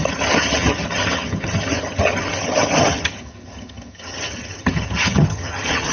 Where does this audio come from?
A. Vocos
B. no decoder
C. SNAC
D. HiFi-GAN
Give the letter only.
D